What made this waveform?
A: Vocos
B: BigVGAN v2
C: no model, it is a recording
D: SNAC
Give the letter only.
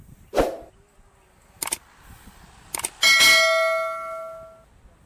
C